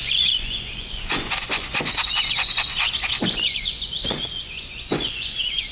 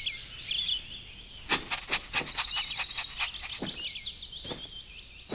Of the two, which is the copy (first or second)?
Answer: first